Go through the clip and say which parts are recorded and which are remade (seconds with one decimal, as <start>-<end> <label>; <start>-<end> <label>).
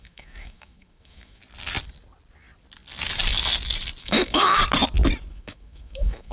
0.0-1.4 remade; 1.4-4.0 recorded; 4.0-4.6 remade; 4.6-5.3 recorded; 5.3-6.3 remade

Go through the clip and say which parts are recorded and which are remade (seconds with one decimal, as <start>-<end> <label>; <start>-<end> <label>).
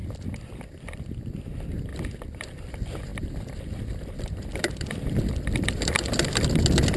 0.0-1.0 remade; 1.0-1.9 recorded; 1.9-2.7 remade; 2.7-3.1 recorded; 3.1-6.6 remade; 6.6-7.0 recorded